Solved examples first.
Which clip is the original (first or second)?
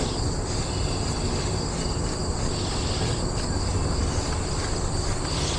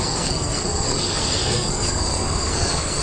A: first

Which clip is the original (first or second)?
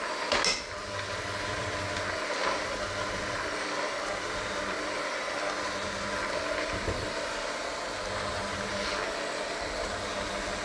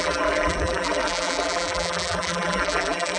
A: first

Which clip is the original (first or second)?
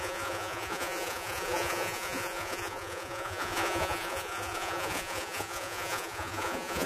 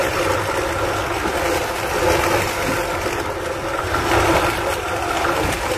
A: second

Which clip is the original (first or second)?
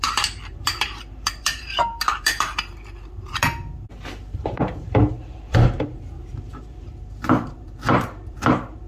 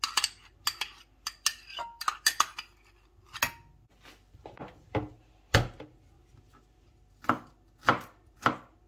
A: second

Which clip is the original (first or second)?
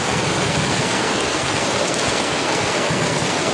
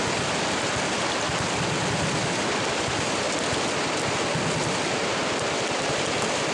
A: second